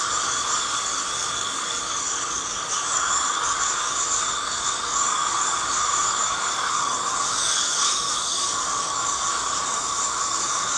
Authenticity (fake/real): fake